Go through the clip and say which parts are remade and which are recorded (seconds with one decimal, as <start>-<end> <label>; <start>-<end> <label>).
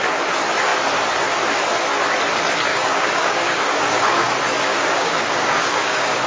0.0-2.7 recorded; 2.7-4.3 remade; 4.3-4.7 recorded; 4.7-6.3 remade